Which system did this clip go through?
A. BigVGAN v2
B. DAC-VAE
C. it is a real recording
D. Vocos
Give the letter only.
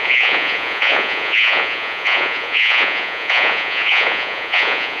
D